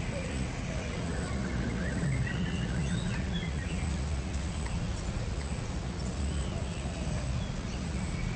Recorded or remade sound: remade